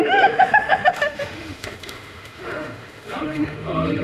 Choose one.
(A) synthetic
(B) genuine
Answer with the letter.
A